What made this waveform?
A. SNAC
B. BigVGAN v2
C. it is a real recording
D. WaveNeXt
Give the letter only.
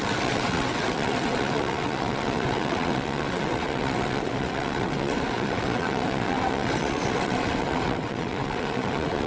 D